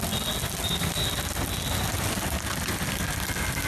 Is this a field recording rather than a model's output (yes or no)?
yes